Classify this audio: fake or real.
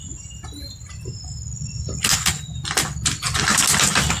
real